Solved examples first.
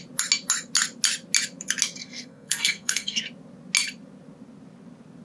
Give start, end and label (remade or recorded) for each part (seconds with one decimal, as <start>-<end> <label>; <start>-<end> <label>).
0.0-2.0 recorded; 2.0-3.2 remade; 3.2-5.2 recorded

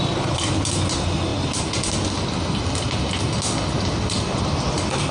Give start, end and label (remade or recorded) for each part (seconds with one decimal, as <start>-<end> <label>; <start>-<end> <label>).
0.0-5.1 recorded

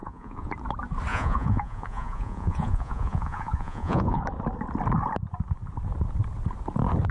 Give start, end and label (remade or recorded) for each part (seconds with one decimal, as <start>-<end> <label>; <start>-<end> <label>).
0.0-0.5 remade; 0.5-1.1 recorded; 1.1-4.2 remade; 4.2-7.1 recorded